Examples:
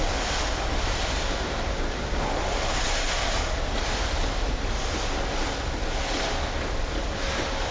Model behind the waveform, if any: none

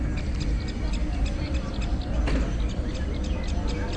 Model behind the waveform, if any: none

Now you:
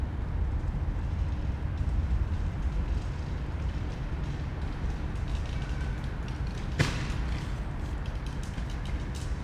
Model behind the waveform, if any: none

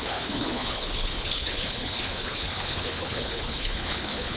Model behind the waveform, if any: codec, HILCodec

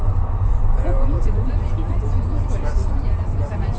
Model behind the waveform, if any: vocoder, BigVGAN v2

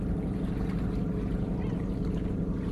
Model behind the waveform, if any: none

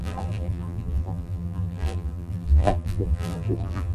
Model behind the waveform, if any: vocoder, BigVGAN v2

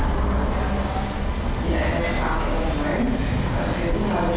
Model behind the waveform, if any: none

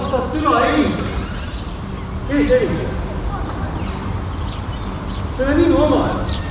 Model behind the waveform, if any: none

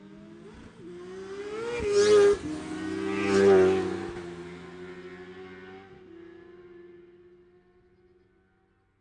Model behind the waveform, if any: none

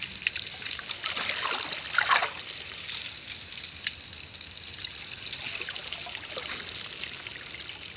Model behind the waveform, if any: none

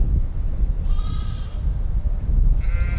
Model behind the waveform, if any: none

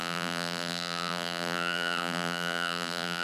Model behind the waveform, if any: vocoder, BigVGAN v2